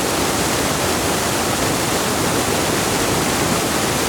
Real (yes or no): yes